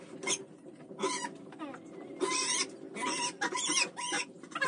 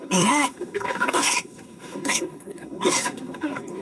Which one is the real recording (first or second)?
first